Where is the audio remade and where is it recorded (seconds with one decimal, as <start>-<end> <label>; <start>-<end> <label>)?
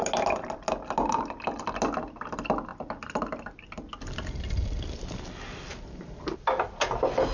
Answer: 0.0-7.3 recorded